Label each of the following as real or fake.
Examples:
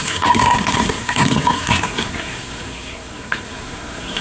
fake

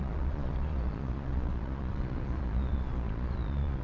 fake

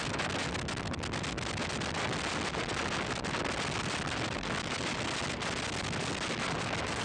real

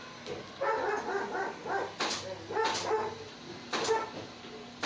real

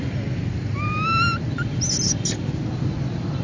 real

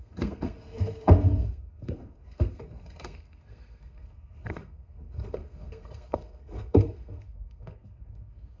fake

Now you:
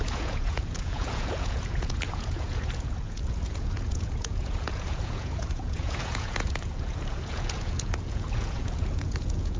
fake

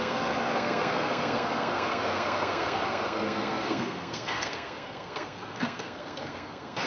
fake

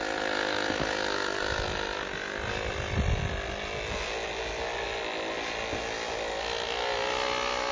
real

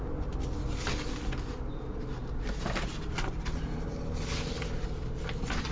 real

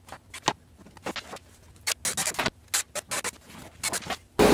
real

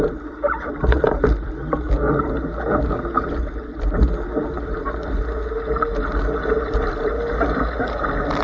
real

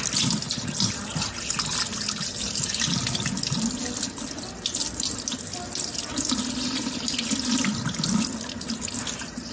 real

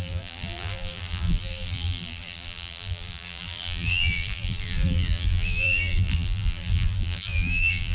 fake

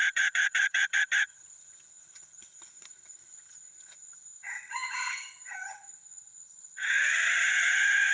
fake